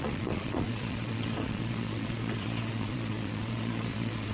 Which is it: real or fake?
fake